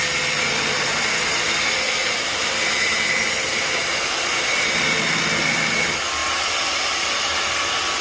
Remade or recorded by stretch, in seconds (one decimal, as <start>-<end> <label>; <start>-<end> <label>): 0.0-2.0 recorded; 2.0-4.7 remade; 4.7-8.0 recorded